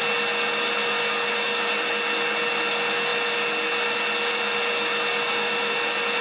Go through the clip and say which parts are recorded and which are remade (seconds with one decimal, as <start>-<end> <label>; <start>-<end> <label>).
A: 0.0-6.2 recorded